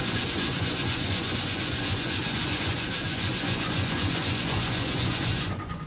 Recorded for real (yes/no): no